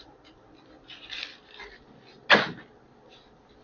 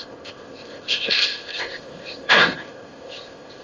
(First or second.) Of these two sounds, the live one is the first